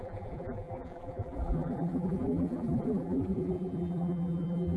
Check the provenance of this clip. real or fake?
fake